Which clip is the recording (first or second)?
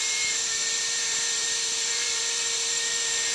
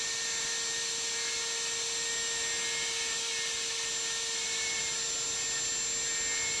second